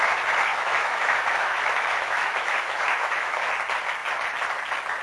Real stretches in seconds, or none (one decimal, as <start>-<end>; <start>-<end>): 0.0-0.5; 3.5-5.0